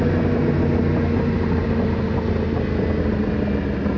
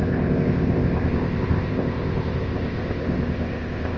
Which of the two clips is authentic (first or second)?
first